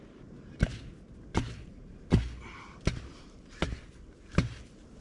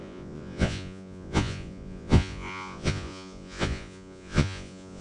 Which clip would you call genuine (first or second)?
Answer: first